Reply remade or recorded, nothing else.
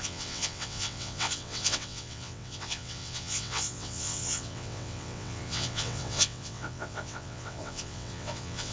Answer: remade